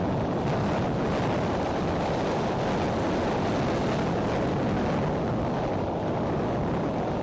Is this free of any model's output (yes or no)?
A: yes